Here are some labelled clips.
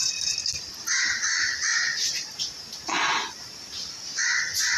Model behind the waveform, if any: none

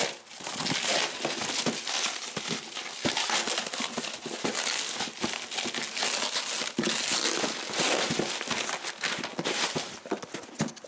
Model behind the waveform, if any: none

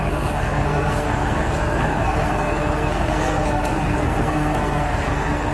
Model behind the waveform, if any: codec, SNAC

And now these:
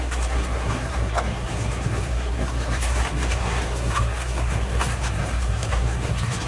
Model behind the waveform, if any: codec, SNAC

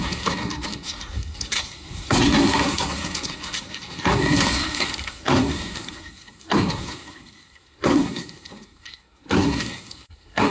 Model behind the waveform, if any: codec, SNAC